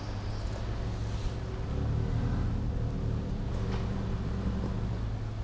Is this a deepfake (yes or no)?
no